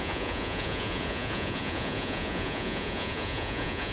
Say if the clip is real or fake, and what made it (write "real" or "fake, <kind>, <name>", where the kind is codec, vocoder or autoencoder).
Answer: fake, vocoder, Vocos